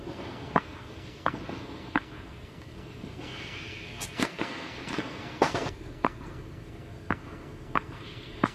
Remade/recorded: remade